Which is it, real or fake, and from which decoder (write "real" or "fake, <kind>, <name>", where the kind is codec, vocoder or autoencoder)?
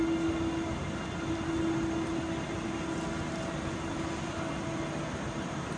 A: real